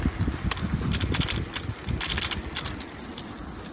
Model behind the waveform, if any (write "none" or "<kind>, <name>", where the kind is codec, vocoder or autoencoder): none